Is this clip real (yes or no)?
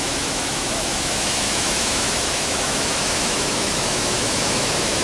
no